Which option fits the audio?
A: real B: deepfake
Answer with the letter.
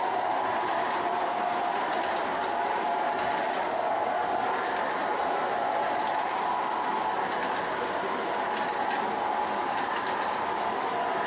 A